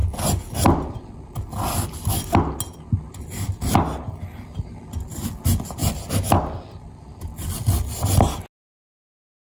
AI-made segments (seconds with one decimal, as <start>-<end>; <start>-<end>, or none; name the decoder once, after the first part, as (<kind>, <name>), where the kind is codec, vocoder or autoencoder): none